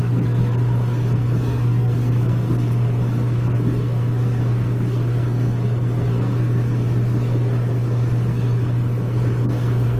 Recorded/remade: remade